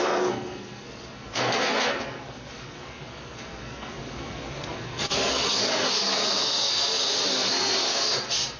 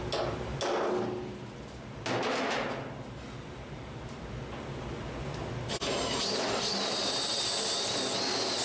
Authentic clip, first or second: second